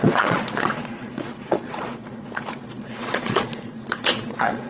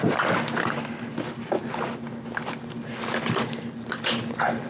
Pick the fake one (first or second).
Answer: first